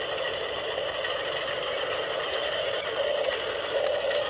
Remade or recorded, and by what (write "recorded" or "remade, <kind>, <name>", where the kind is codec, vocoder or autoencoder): recorded